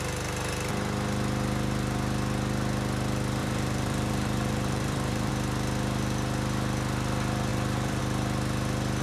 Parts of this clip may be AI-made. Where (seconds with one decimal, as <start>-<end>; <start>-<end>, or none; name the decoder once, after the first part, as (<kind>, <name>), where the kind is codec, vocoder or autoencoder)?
3.4-5.3 (vocoder, BigVGAN v2); 7.5-8.0